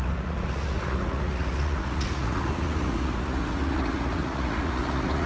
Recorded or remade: remade